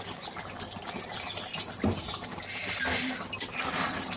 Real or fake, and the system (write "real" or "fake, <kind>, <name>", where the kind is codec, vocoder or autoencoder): fake, vocoder, BigVGAN v2